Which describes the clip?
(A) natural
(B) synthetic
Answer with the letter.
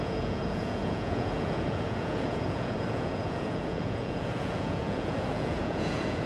B